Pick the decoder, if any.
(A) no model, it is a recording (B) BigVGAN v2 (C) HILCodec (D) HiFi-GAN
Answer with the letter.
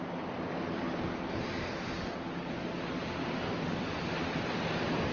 A